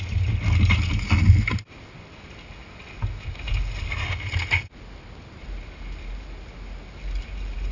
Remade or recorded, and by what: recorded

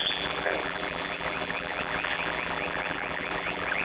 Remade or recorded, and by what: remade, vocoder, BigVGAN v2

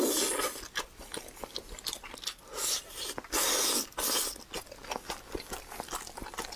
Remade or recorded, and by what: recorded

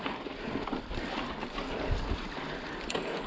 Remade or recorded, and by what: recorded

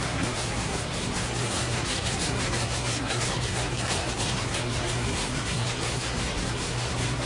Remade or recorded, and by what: remade, codec, SNAC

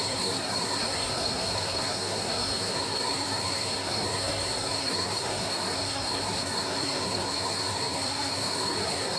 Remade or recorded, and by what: remade, codec, SNAC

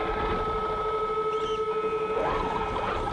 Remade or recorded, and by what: recorded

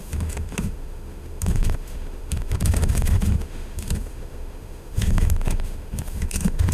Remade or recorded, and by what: remade, autoencoder, DAC-VAE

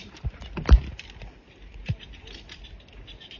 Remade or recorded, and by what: recorded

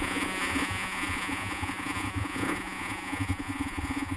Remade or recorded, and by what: remade, vocoder, Vocos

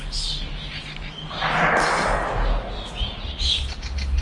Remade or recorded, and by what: recorded